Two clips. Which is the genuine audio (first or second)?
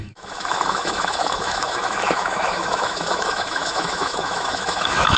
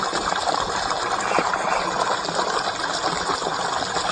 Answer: second